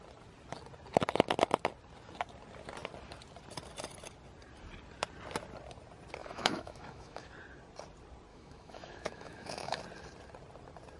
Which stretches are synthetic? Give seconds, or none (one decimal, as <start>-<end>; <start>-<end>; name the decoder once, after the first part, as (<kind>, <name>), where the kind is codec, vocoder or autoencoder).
6.2-7.3 (autoencoder, DAC-VAE); 8.3-9.8